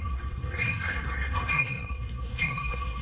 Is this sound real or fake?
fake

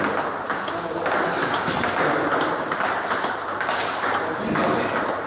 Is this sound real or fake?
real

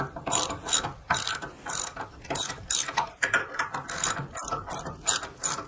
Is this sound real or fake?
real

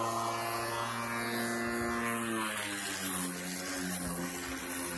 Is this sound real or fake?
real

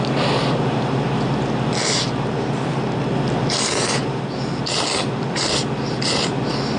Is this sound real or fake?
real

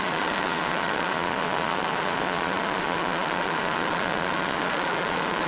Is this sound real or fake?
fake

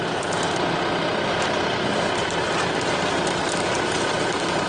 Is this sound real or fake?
real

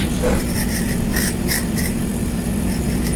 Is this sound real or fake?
fake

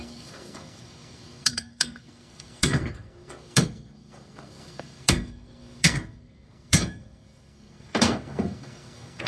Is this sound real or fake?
fake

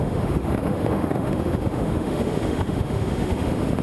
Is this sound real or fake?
fake